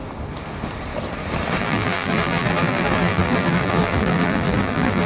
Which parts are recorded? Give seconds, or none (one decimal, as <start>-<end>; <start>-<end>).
0.0-1.6